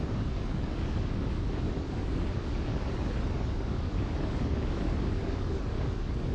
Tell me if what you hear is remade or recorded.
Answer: remade